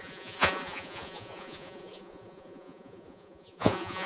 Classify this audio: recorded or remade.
remade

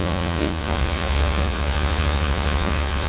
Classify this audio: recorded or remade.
remade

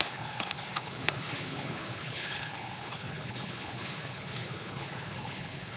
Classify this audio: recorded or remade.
remade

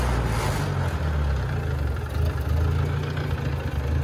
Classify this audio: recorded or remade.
recorded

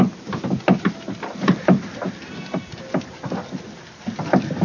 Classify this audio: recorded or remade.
recorded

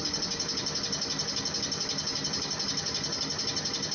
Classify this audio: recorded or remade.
recorded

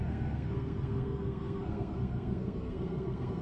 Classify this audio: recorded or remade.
remade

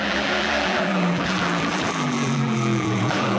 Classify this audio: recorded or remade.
remade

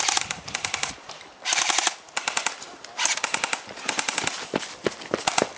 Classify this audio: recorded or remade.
recorded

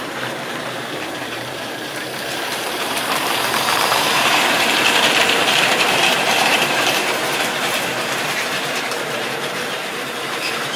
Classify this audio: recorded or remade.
remade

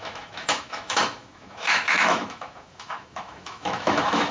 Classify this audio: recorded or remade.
remade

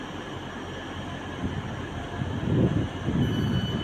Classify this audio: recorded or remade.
recorded